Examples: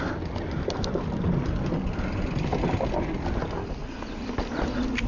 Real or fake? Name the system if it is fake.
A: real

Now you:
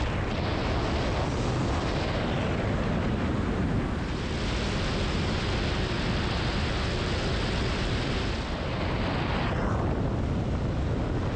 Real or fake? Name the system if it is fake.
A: real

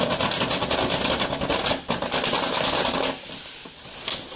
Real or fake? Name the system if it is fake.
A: real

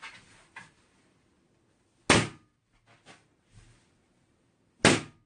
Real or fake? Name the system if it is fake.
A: real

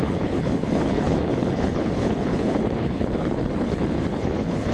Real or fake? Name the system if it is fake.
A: fake, codec, HILCodec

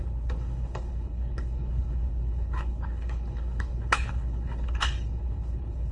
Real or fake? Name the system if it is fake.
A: fake, codec, HILCodec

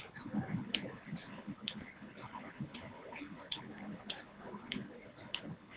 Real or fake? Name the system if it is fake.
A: fake, codec, HILCodec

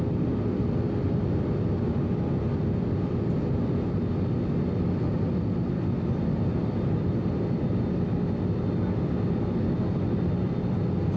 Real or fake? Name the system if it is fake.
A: real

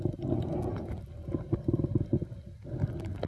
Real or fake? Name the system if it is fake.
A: real